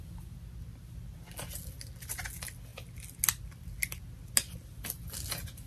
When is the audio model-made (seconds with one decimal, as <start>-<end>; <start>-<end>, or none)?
none